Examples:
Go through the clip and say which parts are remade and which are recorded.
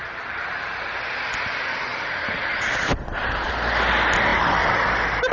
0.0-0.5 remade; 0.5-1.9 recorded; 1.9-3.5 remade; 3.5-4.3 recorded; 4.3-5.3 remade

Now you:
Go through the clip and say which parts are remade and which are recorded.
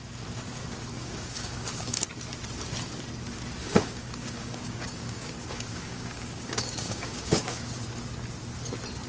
0.0-0.9 recorded; 0.9-2.0 remade; 2.0-3.6 recorded; 3.6-7.6 remade; 7.6-9.1 recorded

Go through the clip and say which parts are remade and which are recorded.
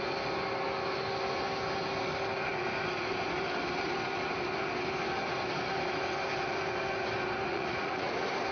0.0-7.5 recorded; 7.5-8.1 remade; 8.1-8.5 recorded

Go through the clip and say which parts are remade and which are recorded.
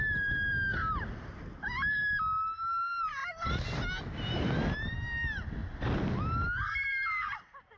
0.0-7.8 recorded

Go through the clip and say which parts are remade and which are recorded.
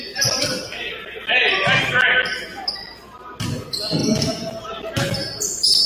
0.0-5.9 recorded